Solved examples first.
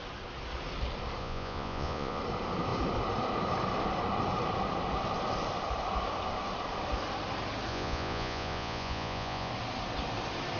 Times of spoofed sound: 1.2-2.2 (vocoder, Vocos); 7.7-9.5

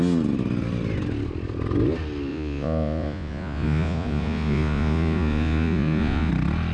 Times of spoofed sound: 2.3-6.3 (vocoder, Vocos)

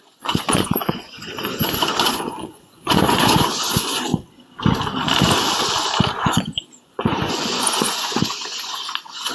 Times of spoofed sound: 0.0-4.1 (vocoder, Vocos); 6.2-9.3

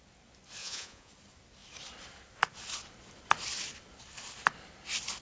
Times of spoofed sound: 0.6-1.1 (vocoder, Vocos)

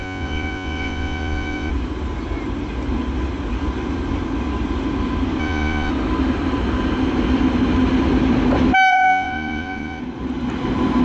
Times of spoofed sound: 0.0-1.7 (vocoder, Vocos); 5.4-5.9; 8.9-10.0